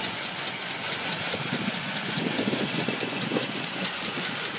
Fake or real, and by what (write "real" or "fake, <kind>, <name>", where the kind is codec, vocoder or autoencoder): fake, vocoder, Vocos